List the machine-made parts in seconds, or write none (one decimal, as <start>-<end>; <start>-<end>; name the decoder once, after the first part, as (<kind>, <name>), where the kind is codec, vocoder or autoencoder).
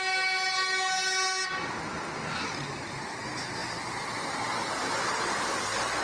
none